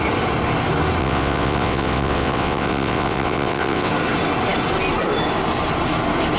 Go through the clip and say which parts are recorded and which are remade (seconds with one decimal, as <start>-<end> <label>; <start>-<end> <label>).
0.0-1.0 recorded; 1.0-3.9 remade; 3.9-6.4 recorded